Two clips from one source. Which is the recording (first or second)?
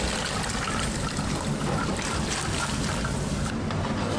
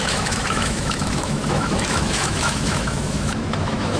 first